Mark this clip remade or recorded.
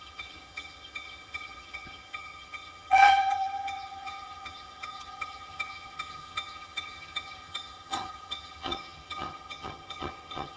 remade